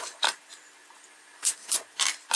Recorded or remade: remade